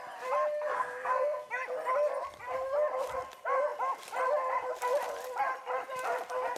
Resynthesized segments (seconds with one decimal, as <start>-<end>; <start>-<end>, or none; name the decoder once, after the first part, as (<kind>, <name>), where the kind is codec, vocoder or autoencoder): 0.7-1.5 (codec, SNAC)